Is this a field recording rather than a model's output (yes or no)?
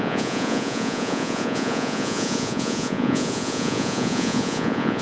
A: no